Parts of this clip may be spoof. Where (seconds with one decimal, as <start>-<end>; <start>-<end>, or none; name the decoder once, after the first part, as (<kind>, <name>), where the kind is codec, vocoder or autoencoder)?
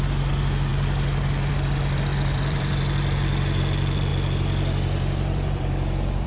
2.1-3.6 (vocoder, BigVGAN v2); 4.1-6.3